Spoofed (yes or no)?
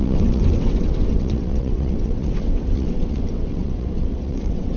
yes